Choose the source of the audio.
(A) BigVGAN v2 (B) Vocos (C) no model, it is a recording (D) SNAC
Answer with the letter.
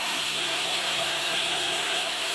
D